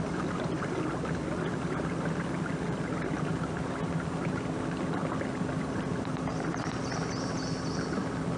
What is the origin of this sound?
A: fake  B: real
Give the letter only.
A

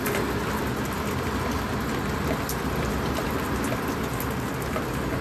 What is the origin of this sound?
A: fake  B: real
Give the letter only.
B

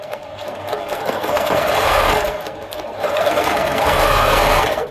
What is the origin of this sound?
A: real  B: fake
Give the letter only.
B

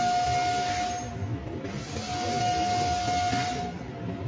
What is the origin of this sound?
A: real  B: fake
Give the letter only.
A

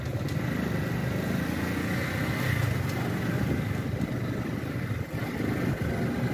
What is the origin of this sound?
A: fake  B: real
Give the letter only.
B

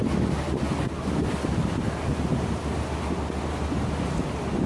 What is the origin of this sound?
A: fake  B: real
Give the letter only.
B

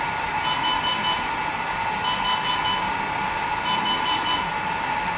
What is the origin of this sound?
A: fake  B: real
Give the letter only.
B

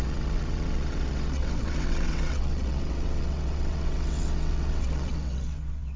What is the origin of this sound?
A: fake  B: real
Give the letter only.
A